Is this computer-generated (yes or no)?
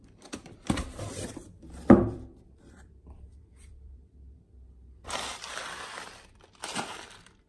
yes